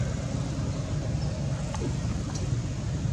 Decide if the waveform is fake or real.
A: real